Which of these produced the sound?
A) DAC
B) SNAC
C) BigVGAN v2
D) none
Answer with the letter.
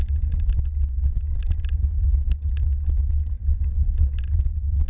D